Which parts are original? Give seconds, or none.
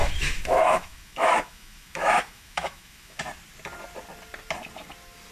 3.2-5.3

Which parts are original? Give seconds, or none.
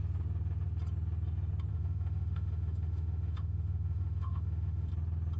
0.0-1.7; 4.9-5.4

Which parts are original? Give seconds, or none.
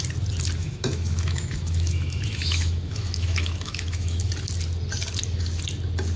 0.0-0.6; 4.3-6.2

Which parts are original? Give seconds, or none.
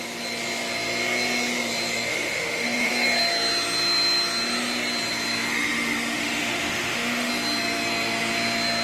0.0-2.1; 2.9-5.5; 7.3-8.8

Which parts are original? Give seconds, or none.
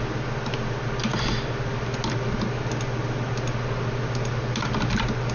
0.0-5.3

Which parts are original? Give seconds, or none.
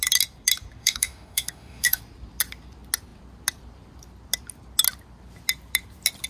0.0-0.8; 2.0-6.3